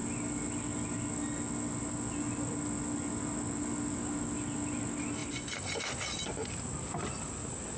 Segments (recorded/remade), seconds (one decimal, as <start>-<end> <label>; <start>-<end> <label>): 0.0-7.8 recorded